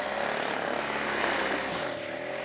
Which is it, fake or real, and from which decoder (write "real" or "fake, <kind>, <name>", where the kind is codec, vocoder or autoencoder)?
real